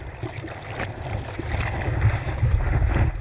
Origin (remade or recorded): recorded